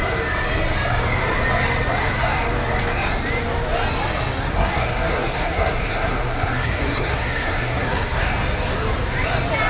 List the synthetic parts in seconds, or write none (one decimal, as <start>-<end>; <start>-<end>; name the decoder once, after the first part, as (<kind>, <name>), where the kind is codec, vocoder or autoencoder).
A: 4.5-8.3 (codec, SNAC)